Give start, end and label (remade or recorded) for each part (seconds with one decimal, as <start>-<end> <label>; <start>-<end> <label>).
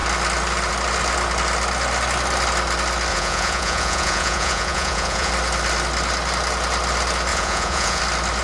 0.0-3.1 recorded; 3.1-5.3 remade; 5.3-7.3 recorded; 7.3-8.0 remade; 8.0-8.4 recorded